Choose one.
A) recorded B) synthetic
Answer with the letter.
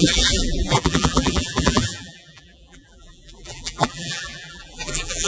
B